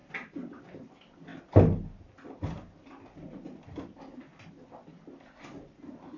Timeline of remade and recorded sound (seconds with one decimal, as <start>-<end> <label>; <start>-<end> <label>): 0.0-6.2 recorded